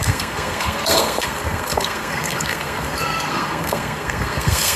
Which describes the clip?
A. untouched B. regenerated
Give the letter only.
B